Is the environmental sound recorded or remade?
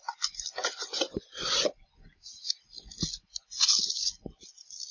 recorded